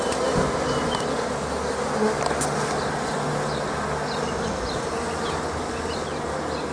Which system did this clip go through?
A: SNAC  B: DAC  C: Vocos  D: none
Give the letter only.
D